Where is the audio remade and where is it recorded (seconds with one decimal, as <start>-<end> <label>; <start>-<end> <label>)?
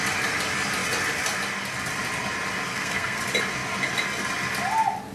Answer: 0.0-2.7 recorded; 2.7-3.2 remade; 3.2-5.1 recorded